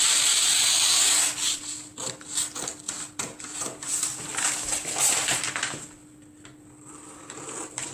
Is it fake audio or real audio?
fake